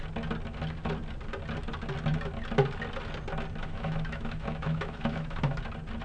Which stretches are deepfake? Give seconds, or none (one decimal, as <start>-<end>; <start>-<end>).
3.6-5.6

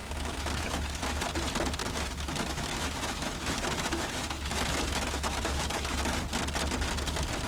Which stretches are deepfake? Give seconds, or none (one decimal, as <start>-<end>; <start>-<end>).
0.0-1.2; 1.8-6.2

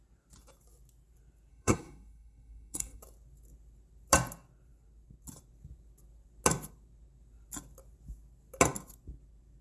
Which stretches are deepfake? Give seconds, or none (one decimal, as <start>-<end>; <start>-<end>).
1.5-3.0

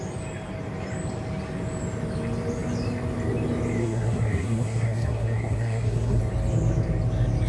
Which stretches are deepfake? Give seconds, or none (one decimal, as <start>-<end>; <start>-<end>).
3.8-6.2

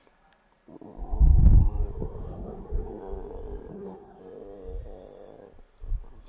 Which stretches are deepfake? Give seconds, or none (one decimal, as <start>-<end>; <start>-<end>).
1.9-3.0; 3.7-4.2

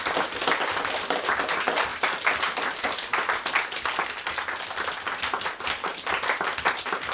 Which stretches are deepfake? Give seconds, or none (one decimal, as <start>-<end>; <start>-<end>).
none

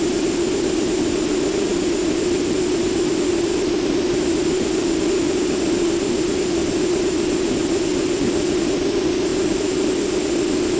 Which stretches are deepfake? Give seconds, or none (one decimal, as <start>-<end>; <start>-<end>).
1.7-3.3; 6.6-8.6; 9.3-9.9

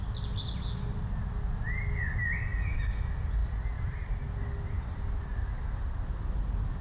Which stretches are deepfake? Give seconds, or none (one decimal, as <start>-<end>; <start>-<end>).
3.4-4.4